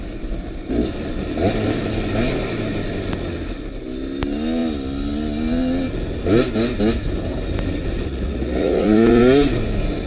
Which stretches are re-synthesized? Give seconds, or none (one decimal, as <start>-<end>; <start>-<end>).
8.1-9.2